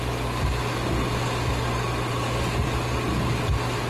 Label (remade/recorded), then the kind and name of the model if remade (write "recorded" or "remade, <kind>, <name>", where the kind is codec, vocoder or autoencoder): recorded